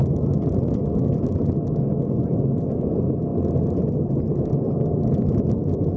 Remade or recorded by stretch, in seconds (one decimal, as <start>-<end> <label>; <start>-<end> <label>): 0.0-6.0 recorded